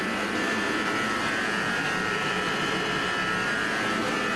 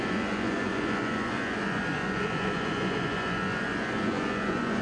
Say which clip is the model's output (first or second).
second